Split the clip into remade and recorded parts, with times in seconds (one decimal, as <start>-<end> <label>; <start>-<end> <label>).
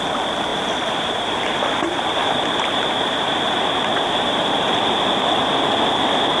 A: 0.0-0.5 recorded; 0.5-4.3 remade; 4.3-6.4 recorded